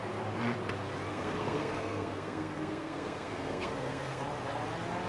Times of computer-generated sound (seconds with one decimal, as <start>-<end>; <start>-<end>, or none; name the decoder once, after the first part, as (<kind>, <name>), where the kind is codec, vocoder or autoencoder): 1.1-4.2 (codec, SNAC)